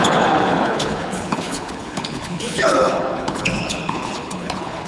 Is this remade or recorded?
remade